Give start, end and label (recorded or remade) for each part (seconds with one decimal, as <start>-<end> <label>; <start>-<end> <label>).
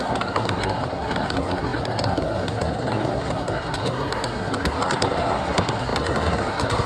0.0-6.9 remade